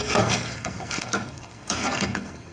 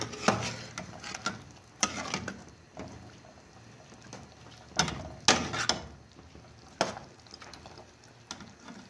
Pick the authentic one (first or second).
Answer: second